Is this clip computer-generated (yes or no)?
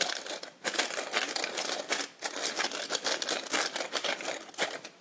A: no